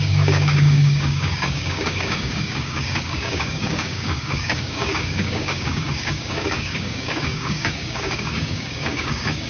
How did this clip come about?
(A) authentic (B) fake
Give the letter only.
B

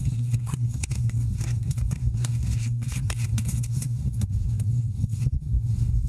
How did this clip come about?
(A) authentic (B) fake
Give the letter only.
B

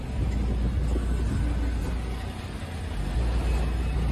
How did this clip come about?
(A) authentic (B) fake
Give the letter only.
A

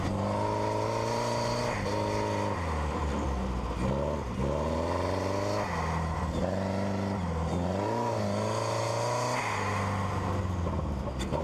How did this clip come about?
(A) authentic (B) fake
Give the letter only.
A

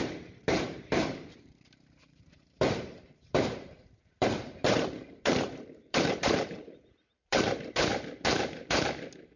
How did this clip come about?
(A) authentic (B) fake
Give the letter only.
B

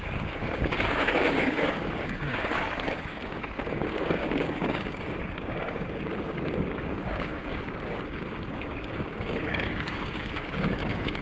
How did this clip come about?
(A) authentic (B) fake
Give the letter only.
B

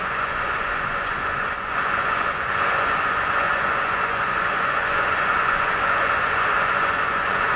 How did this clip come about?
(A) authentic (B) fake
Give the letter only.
B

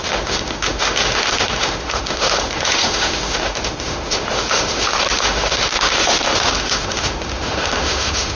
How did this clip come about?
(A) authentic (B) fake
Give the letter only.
B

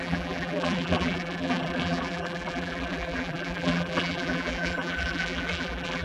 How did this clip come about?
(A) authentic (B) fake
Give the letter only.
B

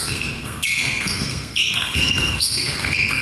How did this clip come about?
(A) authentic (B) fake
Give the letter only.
B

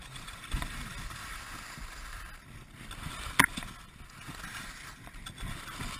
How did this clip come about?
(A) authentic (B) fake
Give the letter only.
A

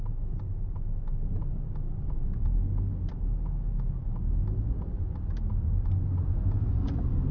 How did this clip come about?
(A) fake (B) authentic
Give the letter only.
B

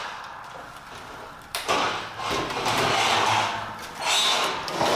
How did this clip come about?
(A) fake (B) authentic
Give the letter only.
B